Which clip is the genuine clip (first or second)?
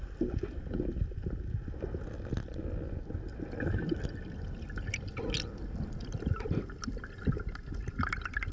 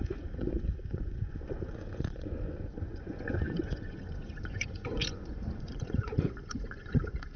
first